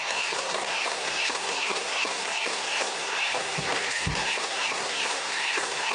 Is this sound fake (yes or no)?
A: yes